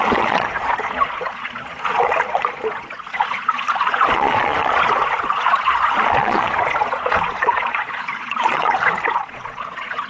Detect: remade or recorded remade